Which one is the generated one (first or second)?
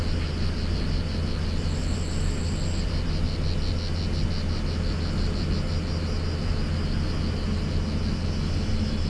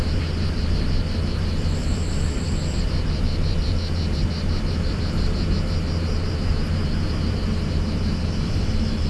second